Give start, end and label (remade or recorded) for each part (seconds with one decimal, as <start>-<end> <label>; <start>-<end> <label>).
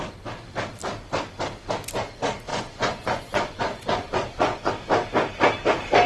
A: 0.0-2.5 recorded; 2.5-4.7 remade; 4.7-6.1 recorded